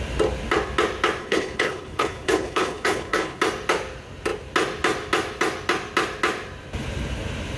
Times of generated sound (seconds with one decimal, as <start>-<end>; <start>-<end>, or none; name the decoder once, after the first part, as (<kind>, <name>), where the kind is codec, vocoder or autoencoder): 1.2-3.4 (codec, HILCodec)